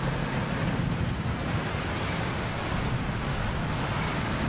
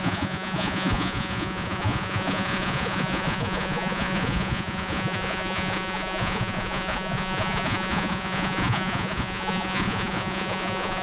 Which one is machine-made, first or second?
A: second